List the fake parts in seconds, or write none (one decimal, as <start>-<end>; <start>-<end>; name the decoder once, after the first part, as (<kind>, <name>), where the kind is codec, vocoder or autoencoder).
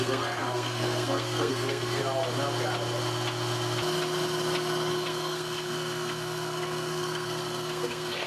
0.0-2.0 (codec, SNAC); 5.1-8.3